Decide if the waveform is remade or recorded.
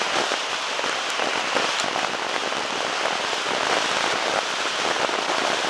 recorded